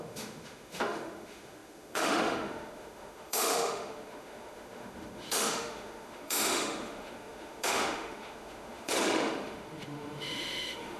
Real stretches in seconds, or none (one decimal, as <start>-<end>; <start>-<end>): none